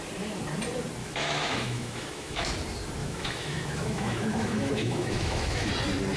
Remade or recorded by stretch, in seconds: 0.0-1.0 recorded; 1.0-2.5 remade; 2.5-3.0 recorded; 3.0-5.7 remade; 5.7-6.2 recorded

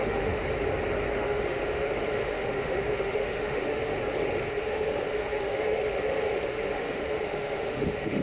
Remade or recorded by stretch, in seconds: 0.0-0.4 remade; 0.4-1.1 recorded; 1.1-3.9 remade; 3.9-4.5 recorded; 4.5-8.2 remade

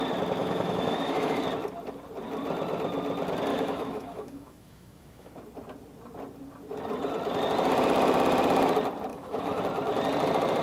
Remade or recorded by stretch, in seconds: 0.0-0.4 recorded; 0.4-1.4 remade; 1.4-3.5 recorded; 3.5-5.3 remade; 5.3-9.1 recorded; 9.1-9.6 remade; 9.6-10.6 recorded

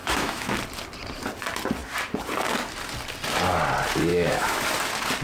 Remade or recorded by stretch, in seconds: 0.0-0.6 remade; 0.6-4.1 recorded; 4.1-4.6 remade; 4.6-5.2 recorded